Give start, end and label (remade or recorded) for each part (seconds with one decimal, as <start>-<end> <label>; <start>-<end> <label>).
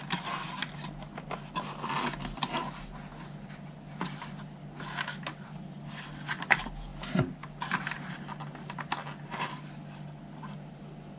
0.0-11.2 recorded